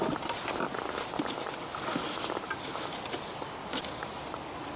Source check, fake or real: real